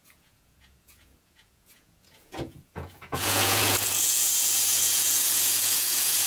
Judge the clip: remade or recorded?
remade